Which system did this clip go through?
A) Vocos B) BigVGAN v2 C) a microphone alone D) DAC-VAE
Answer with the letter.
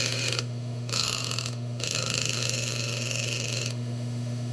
D